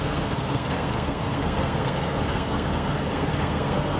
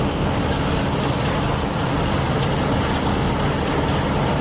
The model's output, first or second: first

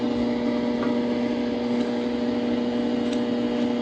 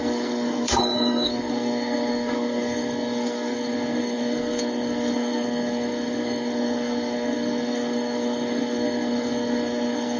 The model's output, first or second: second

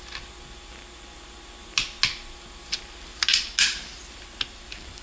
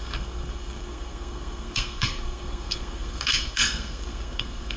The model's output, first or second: second